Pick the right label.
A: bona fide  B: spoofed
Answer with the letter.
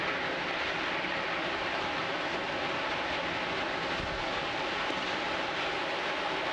A